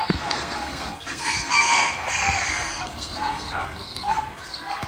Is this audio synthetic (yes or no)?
yes